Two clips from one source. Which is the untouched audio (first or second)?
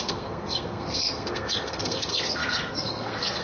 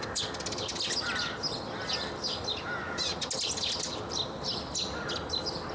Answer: second